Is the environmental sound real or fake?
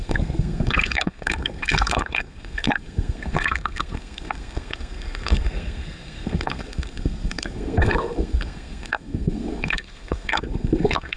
fake